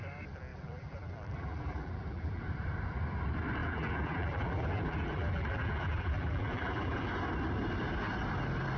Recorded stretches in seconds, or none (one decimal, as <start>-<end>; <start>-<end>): 0.0-0.5; 2.4-3.6; 7.1-8.8

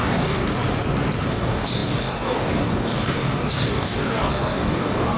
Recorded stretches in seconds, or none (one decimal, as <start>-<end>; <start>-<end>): 0.4-1.3

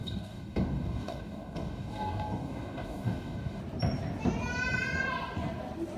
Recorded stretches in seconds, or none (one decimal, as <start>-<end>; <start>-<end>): 3.6-6.0

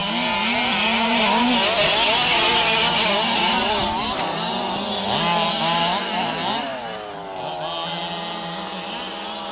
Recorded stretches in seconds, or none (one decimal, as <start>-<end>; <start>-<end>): 0.0-9.5

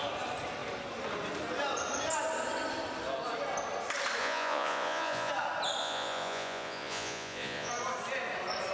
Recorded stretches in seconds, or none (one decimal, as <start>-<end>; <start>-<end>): 0.0-4.2; 5.3-5.8; 7.7-8.7

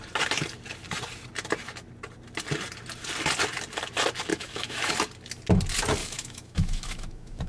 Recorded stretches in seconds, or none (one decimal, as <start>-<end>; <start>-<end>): 0.0-4.3; 4.9-6.0

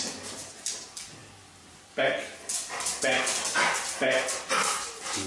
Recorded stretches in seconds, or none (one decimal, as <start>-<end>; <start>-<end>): 0.0-5.3